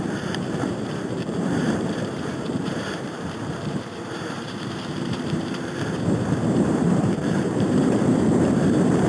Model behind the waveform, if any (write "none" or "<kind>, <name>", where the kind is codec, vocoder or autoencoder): vocoder, BigVGAN v2